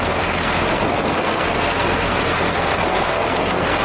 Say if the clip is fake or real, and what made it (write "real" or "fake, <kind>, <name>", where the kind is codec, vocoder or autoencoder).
fake, codec, SNAC